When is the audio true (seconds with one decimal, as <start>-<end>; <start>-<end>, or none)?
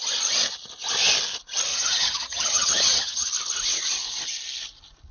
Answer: 0.0-1.7; 3.3-5.1